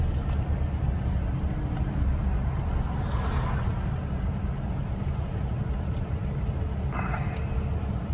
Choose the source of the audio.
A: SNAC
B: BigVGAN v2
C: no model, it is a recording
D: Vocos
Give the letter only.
C